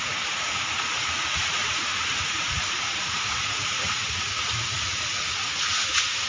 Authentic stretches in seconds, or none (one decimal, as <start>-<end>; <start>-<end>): none